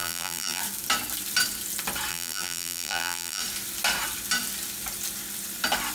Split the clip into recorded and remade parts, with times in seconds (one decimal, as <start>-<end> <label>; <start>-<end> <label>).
0.0-0.6 remade; 0.6-2.1 recorded; 2.1-3.4 remade; 3.4-5.9 recorded